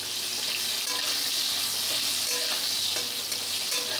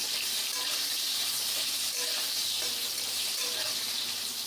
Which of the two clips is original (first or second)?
first